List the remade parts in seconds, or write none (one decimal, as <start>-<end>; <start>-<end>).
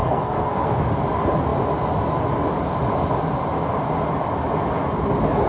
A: 0.0-0.7